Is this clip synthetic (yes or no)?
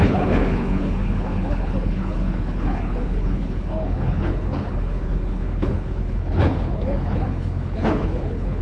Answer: yes